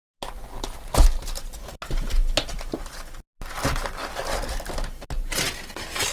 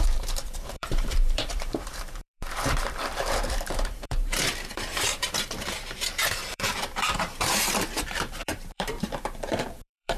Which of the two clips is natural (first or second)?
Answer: first